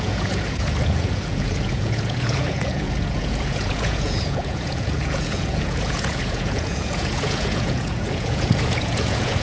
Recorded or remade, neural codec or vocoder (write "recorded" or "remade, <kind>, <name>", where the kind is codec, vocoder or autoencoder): remade, vocoder, Vocos